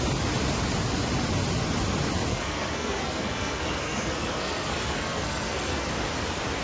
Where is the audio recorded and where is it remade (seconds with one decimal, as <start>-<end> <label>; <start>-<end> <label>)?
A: 0.0-2.3 recorded; 2.3-5.9 remade; 5.9-6.6 recorded